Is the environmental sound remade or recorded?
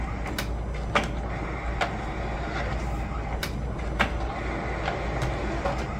recorded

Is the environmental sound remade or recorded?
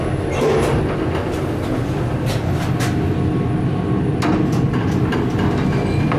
recorded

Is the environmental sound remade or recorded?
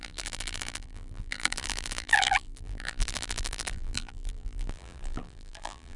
remade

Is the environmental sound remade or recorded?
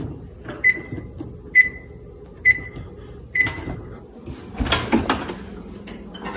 recorded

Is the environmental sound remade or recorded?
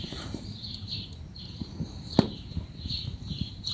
remade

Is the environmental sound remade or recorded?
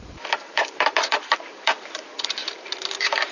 remade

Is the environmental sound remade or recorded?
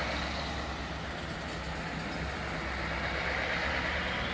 recorded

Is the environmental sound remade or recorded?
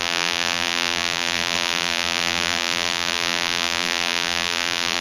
remade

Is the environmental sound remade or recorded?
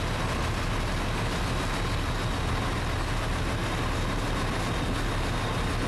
recorded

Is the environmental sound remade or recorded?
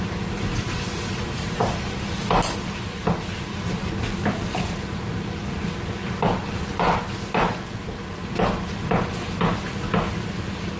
remade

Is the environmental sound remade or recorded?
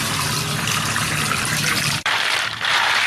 remade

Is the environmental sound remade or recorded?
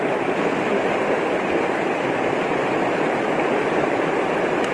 recorded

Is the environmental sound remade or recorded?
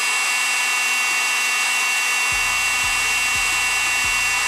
recorded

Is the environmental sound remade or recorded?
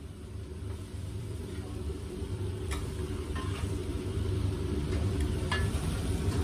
remade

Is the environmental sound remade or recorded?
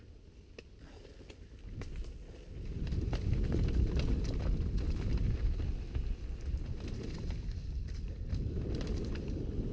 remade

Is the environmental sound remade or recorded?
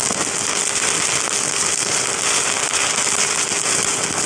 recorded